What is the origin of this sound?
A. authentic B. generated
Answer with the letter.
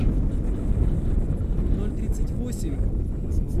A